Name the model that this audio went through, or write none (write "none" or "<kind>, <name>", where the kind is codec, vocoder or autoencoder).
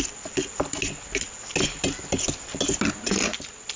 none